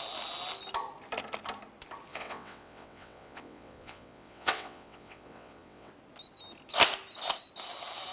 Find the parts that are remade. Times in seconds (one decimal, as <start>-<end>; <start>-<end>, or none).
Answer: 2.1-5.9